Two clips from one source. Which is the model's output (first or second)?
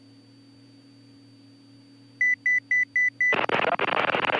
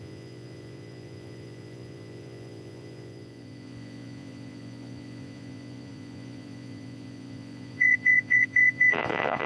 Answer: second